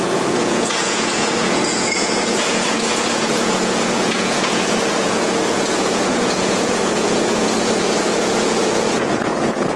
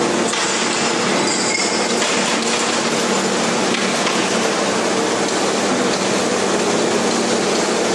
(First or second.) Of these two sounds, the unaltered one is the second